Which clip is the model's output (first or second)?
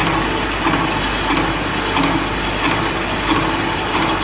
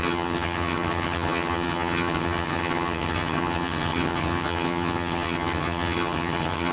second